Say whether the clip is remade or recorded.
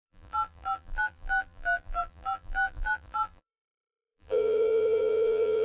remade